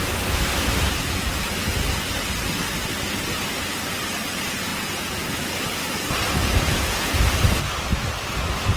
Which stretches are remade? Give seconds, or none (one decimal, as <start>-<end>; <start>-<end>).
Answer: 4.7-5.5; 6.4-7.2